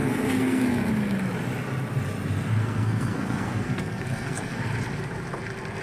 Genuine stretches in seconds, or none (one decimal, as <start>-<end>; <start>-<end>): 0.9-2.5; 4.7-5.8